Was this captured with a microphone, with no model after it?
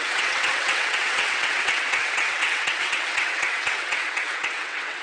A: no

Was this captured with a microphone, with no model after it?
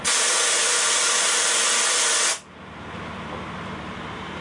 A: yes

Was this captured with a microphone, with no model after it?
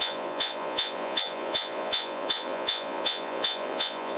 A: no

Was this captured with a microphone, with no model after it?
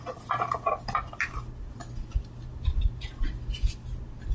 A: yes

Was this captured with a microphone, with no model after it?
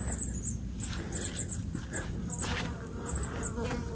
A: yes